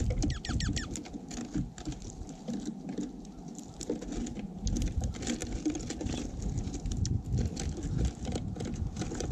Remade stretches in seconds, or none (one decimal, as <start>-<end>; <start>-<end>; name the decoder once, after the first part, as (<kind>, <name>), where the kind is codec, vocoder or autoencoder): none